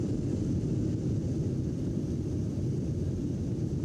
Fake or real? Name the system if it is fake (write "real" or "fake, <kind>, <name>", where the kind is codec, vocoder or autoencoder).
real